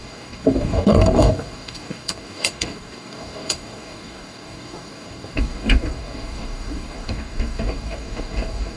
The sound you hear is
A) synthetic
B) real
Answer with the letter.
A